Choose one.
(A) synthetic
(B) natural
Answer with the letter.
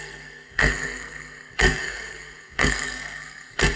A